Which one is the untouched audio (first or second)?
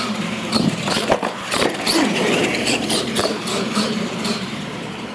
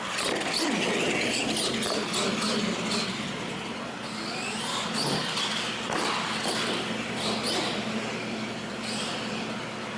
second